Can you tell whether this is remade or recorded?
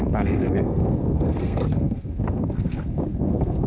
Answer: remade